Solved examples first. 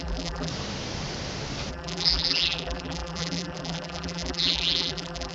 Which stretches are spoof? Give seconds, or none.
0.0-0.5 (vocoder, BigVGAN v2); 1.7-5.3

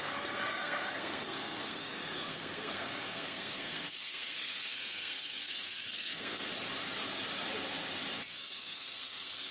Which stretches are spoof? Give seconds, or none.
0.0-6.5 (codec, SNAC); 8.3-9.5

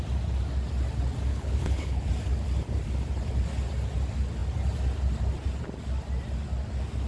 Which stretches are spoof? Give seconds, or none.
1.3-2.1 (codec, HILCodec)

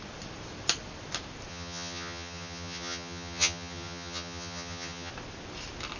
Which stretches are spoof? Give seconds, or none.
1.5-5.1 (vocoder, HiFi-GAN)

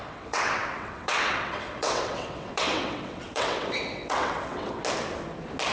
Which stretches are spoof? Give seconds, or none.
0.0-4.8 (vocoder, WaveNeXt)

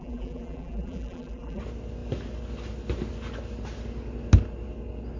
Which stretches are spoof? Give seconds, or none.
0.0-1.6 (vocoder, BigVGAN v2)